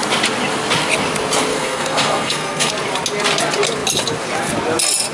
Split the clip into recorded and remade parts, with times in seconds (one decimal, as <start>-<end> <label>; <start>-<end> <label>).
0.0-1.5 recorded; 1.5-2.7 remade; 2.7-5.1 recorded